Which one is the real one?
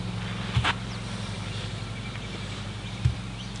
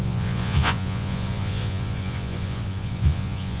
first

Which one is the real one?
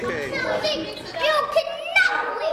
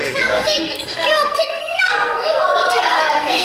first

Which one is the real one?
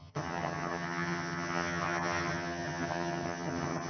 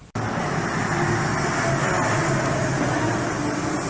second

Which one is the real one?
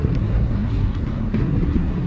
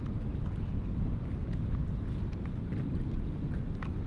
second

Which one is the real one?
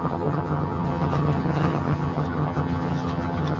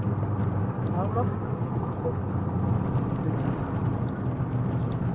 second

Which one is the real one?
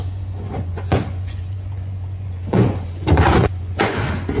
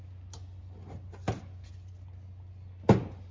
second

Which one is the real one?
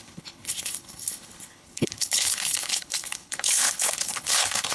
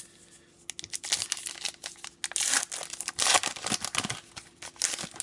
second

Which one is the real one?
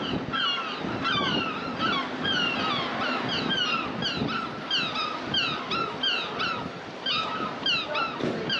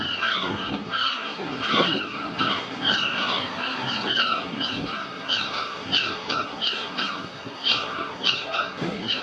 first